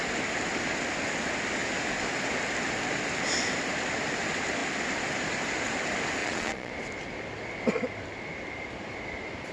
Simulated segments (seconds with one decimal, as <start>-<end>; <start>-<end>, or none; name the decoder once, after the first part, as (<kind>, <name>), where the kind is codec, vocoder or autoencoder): 6.2-6.7 (vocoder, Vocos)